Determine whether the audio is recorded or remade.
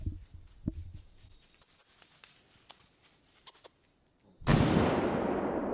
recorded